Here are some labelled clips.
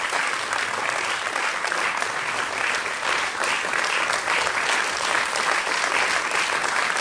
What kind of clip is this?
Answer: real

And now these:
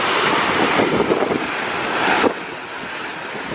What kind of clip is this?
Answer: real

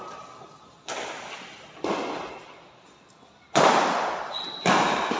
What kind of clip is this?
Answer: real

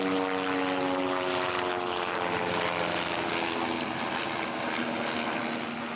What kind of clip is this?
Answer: real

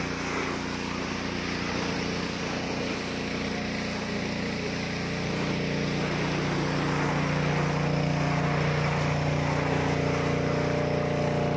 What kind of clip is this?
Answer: real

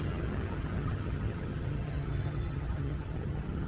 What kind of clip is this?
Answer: fake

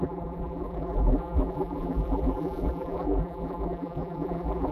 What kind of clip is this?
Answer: fake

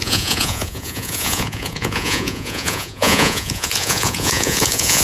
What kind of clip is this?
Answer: fake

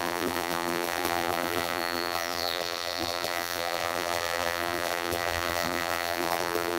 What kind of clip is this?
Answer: fake